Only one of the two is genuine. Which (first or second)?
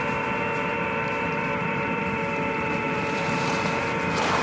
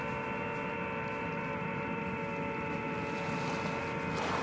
second